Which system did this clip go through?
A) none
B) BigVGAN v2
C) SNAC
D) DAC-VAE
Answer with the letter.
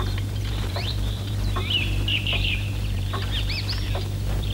B